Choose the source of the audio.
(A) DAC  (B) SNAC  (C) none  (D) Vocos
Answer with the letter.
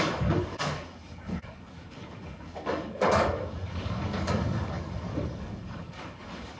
A